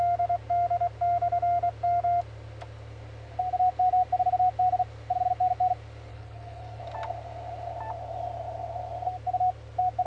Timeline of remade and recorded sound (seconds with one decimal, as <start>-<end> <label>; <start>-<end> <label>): 0.0-6.1 recorded; 6.1-6.8 remade; 6.8-10.1 recorded

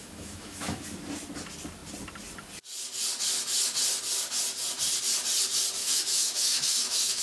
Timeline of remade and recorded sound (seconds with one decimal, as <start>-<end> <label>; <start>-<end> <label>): 0.0-0.8 remade; 0.8-5.8 recorded; 5.8-7.2 remade

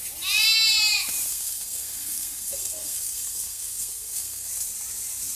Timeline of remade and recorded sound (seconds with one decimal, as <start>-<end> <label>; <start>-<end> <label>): 0.0-1.3 recorded; 1.3-4.5 remade; 4.5-5.3 recorded